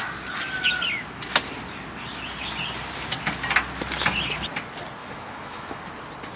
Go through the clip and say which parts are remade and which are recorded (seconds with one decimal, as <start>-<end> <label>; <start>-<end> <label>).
0.0-5.0 recorded; 5.0-5.8 remade; 5.8-6.4 recorded